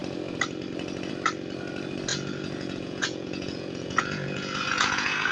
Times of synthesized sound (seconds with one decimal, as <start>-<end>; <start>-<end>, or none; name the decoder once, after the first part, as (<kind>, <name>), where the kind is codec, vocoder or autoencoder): 2.1-5.3 (vocoder, Vocos)